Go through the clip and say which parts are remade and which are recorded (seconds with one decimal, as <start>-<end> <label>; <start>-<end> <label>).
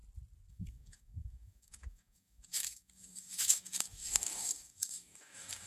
0.0-0.5 recorded; 0.5-5.7 remade